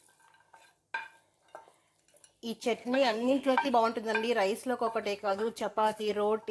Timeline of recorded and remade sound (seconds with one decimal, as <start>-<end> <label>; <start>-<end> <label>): 0.0-2.8 recorded; 2.8-3.7 remade; 3.7-5.2 recorded; 5.2-6.1 remade; 6.1-6.5 recorded